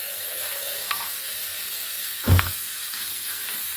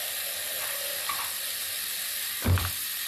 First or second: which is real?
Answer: second